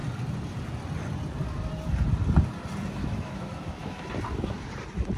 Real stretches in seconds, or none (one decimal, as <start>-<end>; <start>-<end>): 0.0-3.0; 4.1-5.2